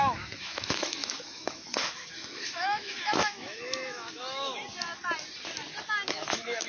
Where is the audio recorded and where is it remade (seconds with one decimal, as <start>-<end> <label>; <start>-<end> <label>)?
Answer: 0.0-4.6 remade; 4.6-6.1 recorded; 6.1-6.7 remade